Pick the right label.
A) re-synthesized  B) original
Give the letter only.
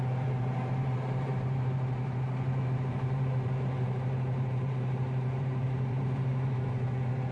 A